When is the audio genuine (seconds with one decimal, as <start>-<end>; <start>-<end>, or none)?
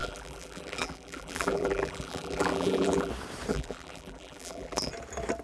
3.1-3.5; 4.9-5.4